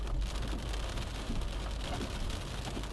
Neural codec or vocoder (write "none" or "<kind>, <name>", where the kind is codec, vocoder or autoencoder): none